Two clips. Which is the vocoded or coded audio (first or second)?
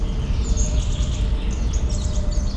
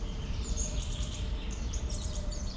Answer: second